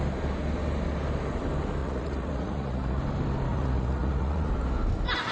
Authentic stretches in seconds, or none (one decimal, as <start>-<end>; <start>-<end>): 0.0-1.8; 3.0-3.5; 4.5-5.3

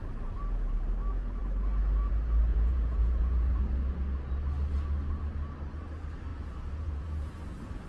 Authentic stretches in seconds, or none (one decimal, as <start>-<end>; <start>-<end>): 0.0-2.5; 3.6-6.3; 7.3-7.9